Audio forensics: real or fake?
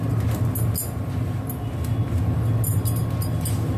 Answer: real